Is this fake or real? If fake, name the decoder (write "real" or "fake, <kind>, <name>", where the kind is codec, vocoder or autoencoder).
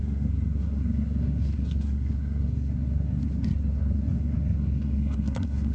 fake, codec, SNAC